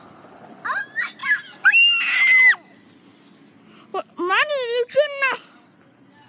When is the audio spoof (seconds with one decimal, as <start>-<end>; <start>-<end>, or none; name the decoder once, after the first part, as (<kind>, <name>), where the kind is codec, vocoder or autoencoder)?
none

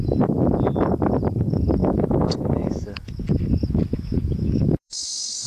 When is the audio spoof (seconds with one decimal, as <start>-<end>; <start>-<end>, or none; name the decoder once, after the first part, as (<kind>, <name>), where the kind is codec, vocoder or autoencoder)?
1.8-3.2 (autoencoder, DAC-VAE); 3.9-5.5

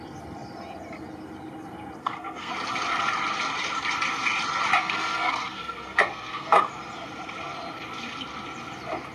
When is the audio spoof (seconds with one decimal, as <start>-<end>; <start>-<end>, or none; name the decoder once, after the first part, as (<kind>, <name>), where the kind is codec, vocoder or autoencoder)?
2.0-2.5 (codec, SNAC); 4.8-6.7

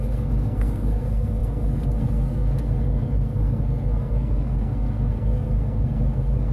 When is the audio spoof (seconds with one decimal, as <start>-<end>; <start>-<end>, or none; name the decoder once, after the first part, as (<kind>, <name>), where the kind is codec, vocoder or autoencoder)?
0.0-6.5 (codec, SNAC)

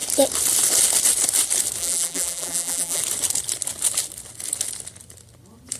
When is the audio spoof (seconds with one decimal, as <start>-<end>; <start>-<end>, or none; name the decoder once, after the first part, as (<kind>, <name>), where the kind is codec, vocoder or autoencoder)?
1.8-3.0 (vocoder, BigVGAN v2)

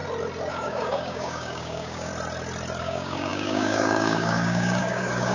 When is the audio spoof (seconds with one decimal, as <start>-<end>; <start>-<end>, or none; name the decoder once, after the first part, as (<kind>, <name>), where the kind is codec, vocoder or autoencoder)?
0.5-2.1 (codec, DAC); 2.8-5.3